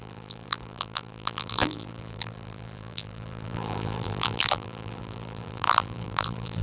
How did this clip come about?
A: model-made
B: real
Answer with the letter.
A